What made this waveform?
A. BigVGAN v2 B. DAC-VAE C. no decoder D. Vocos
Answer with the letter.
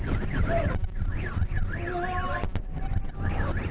C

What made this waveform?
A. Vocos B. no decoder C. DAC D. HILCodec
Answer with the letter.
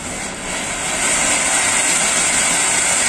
B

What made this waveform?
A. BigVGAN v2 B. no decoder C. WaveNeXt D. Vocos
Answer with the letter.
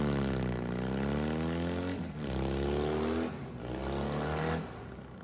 B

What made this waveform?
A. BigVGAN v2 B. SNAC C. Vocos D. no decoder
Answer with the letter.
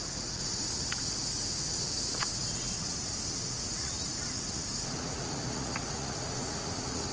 C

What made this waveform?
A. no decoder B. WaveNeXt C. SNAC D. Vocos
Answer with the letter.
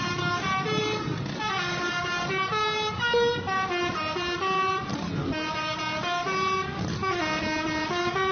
A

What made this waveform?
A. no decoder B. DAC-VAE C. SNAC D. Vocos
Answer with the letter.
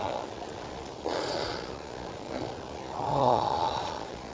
D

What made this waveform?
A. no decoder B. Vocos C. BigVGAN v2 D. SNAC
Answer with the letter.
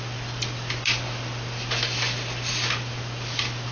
A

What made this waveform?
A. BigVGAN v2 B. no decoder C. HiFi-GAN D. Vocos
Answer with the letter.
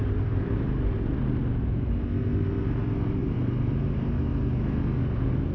B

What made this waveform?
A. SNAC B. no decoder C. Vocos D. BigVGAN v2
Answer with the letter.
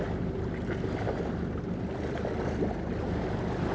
B